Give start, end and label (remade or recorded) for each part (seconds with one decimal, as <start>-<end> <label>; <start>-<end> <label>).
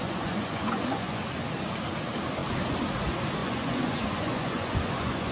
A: 0.0-1.2 remade; 1.2-3.4 recorded; 3.4-5.3 remade